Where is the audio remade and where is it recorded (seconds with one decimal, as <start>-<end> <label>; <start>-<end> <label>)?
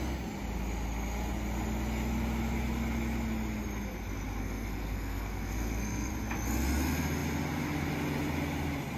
0.0-4.4 recorded; 4.4-6.1 remade; 6.1-9.0 recorded